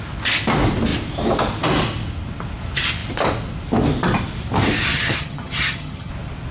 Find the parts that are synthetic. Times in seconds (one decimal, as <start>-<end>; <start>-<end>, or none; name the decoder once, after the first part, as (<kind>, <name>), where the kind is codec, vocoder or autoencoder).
4.9-6.1 (vocoder, HiFi-GAN)